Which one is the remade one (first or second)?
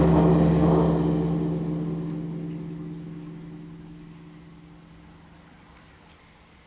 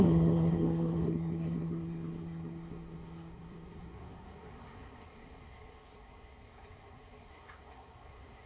second